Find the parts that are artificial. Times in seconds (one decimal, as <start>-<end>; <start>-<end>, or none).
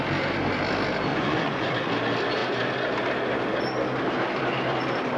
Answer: 1.1-1.7